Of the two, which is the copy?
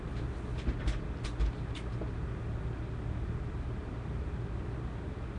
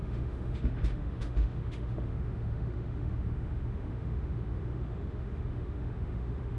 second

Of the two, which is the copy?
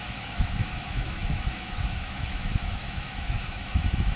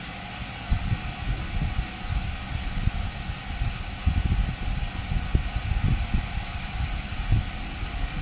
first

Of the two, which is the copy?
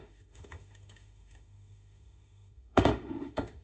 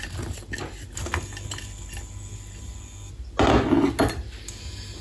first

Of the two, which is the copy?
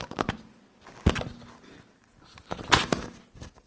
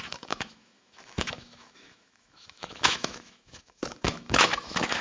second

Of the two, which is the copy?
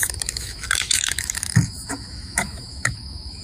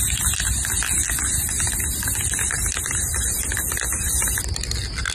first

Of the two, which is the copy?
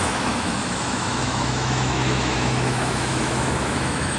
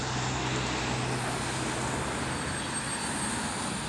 first